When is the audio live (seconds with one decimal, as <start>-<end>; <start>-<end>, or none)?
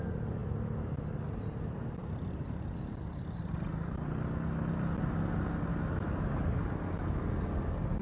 0.0-8.0